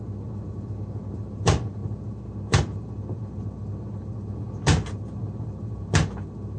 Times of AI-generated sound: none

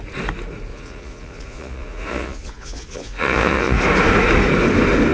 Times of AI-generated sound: 0.7-3.8 (vocoder, Vocos)

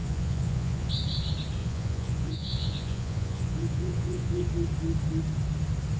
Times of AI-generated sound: 0.0-0.9 (vocoder, Vocos); 1.6-4.5

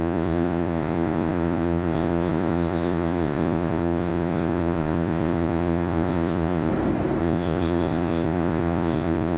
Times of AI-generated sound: 0.0-6.7 (vocoder, Vocos); 7.2-9.4

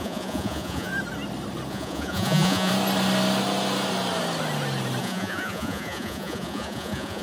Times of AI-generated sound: 0.0-0.9 (vocoder, Vocos); 1.7-2.7; 5.0-7.2